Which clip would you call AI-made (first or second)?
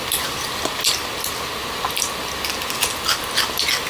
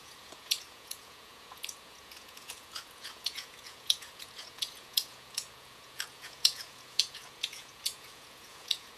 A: second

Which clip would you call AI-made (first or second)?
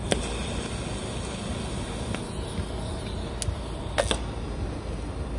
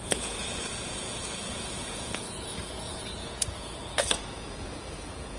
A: second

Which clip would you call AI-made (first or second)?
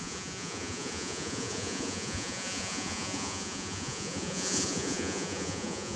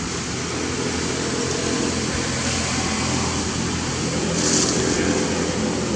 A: first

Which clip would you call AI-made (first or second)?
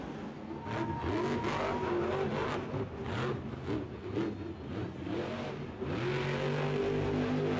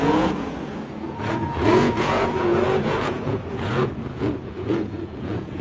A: second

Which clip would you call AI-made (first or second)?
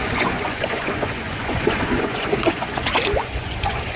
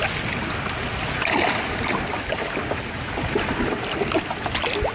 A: first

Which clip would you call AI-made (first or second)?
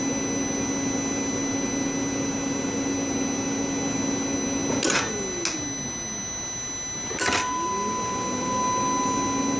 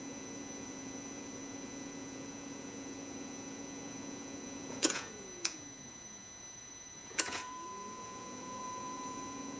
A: second